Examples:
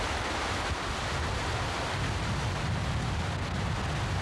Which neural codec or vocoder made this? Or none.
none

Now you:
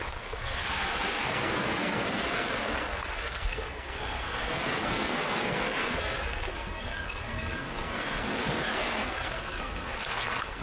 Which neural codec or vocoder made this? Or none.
codec, SNAC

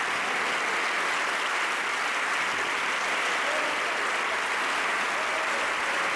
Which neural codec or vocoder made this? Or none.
none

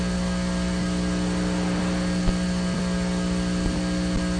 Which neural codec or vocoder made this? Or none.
none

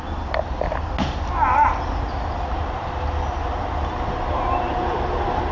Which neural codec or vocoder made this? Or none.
none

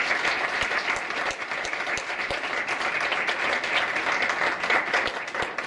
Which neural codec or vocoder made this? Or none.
none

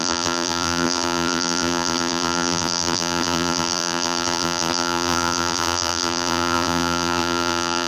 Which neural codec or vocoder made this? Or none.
vocoder, BigVGAN v2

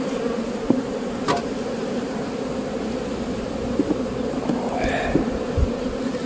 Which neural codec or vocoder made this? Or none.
vocoder, BigVGAN v2